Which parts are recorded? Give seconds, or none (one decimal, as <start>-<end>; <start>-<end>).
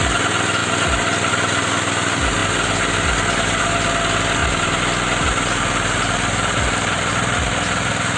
0.0-8.2